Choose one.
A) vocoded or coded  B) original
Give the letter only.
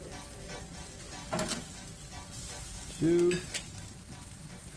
B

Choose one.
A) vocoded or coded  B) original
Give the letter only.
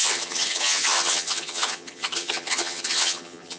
A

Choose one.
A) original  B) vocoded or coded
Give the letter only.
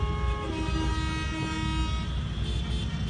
A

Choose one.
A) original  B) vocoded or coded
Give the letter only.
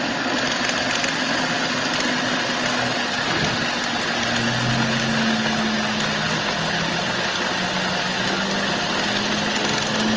A